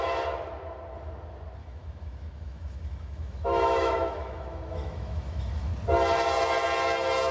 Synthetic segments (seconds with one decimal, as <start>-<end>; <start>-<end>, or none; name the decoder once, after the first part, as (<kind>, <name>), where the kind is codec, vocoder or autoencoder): 1.6-5.7 (autoencoder, DAC-VAE)